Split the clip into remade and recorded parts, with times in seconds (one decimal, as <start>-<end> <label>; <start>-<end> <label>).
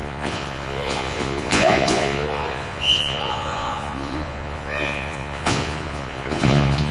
0.0-6.9 remade